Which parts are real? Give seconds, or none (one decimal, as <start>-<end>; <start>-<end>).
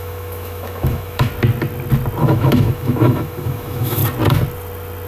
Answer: 1.3-2.2; 4.0-5.1